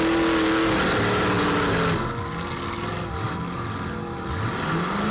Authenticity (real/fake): real